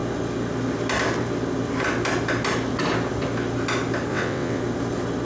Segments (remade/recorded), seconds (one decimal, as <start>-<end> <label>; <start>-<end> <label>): 0.0-4.1 recorded; 4.1-4.6 remade; 4.6-5.2 recorded